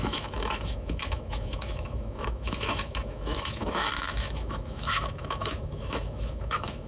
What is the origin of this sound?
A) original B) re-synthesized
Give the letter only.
B